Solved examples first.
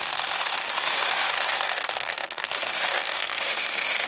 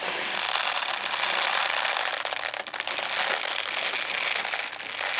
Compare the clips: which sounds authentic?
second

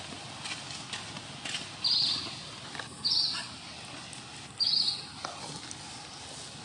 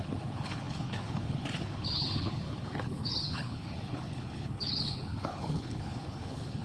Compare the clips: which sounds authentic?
first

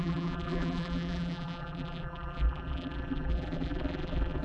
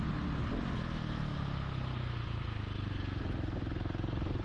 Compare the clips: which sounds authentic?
second